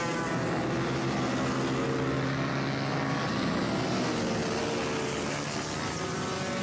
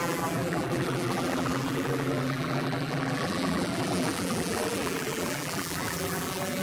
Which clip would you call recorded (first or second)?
first